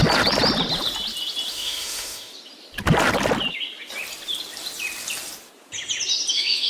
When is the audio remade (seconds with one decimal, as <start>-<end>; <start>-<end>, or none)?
1.5-2.3; 6.3-6.7